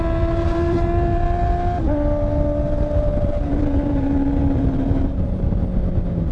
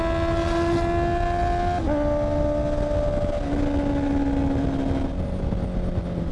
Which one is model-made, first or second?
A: first